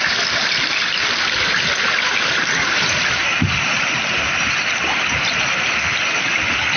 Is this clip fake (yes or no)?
no